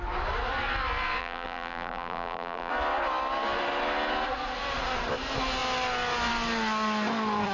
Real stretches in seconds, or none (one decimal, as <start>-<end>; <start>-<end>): 0.0-1.2; 2.7-7.5